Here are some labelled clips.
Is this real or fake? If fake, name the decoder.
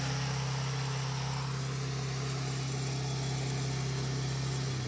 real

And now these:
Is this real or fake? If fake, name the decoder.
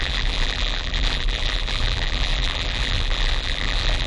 fake, vocoder, BigVGAN v2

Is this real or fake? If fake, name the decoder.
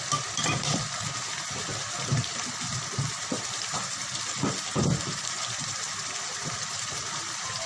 fake, vocoder, BigVGAN v2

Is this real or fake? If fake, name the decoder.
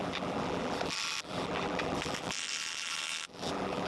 fake, vocoder, BigVGAN v2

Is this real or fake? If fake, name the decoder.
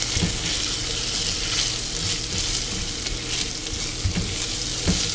real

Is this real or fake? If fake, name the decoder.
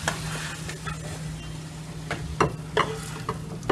real